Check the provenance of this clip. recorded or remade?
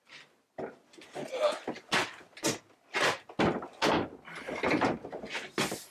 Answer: recorded